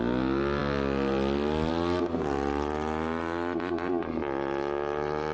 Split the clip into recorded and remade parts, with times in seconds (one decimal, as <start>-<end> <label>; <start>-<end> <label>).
0.0-5.3 recorded

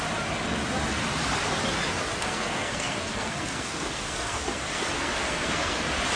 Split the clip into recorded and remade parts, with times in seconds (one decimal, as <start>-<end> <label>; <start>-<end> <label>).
0.0-2.1 recorded; 2.1-5.8 remade; 5.8-6.2 recorded

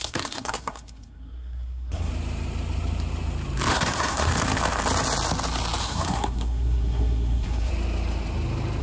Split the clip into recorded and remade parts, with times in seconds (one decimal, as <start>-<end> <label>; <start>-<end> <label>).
0.0-2.1 remade; 2.1-3.7 recorded; 3.7-4.3 remade; 4.3-5.8 recorded; 5.8-7.7 remade; 7.7-8.8 recorded

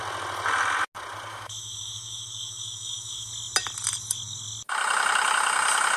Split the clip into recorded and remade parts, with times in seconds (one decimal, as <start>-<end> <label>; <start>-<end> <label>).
0.0-1.3 recorded; 1.3-3.3 remade; 3.3-6.0 recorded

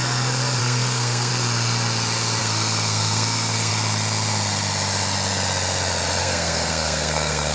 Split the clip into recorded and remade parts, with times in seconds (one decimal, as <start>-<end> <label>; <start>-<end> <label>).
0.0-0.6 recorded; 0.6-1.3 remade; 1.3-2.4 recorded; 2.4-3.7 remade; 3.7-6.2 recorded; 6.2-7.5 remade

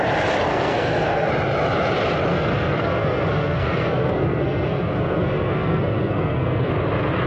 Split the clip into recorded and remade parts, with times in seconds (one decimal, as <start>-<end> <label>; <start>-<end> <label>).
0.0-0.5 recorded; 0.5-1.3 remade; 1.3-2.3 recorded; 2.3-6.7 remade; 6.7-7.3 recorded